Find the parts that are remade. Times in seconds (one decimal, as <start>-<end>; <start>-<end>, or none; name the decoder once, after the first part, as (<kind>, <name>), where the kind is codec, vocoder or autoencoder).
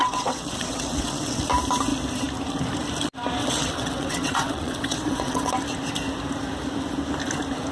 0.0-1.5 (vocoder, WaveNeXt); 3.4-5.5